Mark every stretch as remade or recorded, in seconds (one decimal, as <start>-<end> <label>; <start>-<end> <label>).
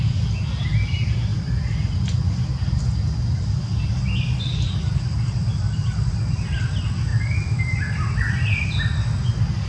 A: 0.0-9.7 recorded